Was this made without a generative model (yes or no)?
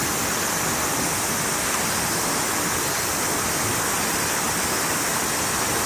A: yes